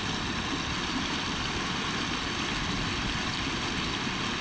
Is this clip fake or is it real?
real